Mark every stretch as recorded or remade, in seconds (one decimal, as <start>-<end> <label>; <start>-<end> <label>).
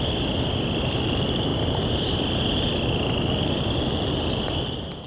0.0-5.1 recorded